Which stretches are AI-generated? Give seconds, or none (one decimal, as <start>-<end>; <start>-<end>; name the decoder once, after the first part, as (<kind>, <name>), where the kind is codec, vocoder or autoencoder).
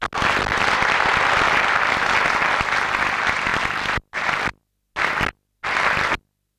none